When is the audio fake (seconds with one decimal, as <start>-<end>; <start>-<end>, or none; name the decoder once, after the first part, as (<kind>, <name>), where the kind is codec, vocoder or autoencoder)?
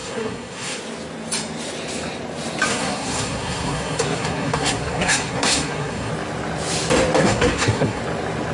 0.0-0.8 (codec, SNAC); 2.7-6.1; 7.2-8.0